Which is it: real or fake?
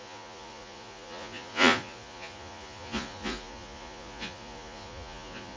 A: fake